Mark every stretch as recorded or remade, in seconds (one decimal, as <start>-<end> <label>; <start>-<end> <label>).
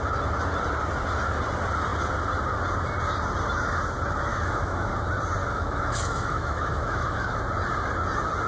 0.0-4.3 recorded; 4.3-4.9 remade; 4.9-5.4 recorded; 5.4-7.4 remade; 7.4-8.5 recorded